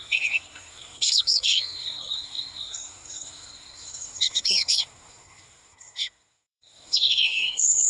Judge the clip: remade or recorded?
remade